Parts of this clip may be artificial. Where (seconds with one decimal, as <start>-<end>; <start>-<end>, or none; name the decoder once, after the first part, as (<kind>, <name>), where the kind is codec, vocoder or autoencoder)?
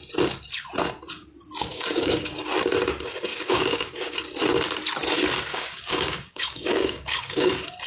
1.7-2.3 (codec, DAC); 3.3-4.2; 5.5-7.5